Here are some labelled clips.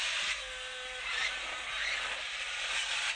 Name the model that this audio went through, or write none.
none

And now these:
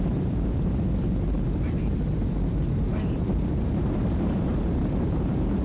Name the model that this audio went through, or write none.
vocoder, BigVGAN v2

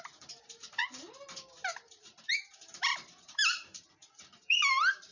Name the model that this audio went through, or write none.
vocoder, BigVGAN v2